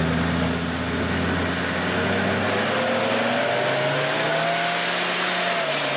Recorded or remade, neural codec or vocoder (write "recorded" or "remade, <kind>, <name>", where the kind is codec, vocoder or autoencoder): recorded